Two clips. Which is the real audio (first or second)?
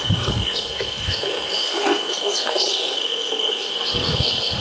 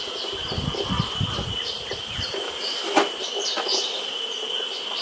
second